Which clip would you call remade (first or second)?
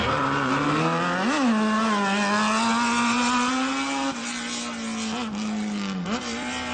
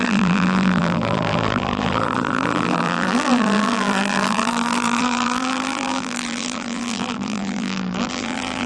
second